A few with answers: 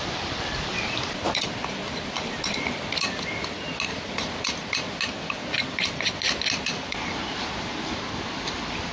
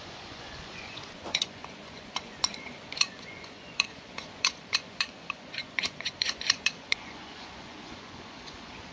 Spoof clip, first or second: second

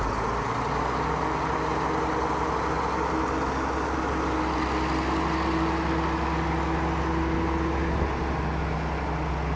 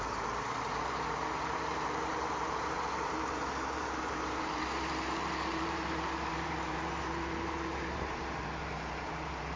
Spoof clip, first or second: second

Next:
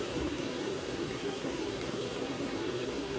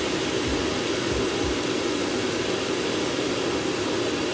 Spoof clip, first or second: first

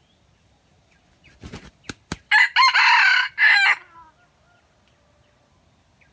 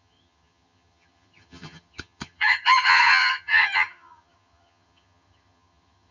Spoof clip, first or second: second